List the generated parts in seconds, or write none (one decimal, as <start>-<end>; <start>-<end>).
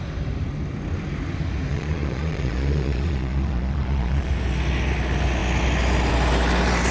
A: 1.7-4.3